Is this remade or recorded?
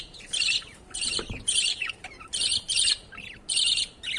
remade